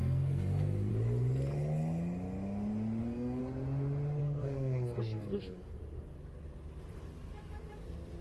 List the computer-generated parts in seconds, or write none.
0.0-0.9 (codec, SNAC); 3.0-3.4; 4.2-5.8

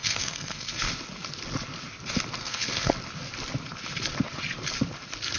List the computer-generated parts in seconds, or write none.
0.0-0.9 (codec, SNAC); 2.4-2.9

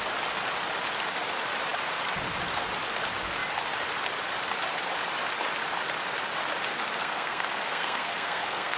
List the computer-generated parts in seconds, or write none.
7.0-8.8 (codec, SNAC)

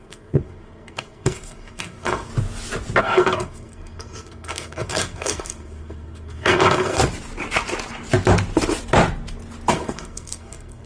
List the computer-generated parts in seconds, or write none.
0.0-2.3 (codec, SNAC); 3.0-7.0; 9.7-10.9

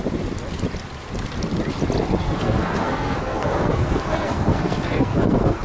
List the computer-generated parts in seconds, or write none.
2.2-5.6 (codec, SNAC)